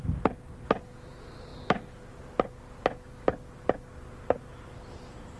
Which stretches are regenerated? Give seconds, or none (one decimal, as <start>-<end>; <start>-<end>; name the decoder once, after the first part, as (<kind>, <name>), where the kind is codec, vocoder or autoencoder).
none